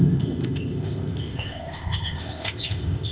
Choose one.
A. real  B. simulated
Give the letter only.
B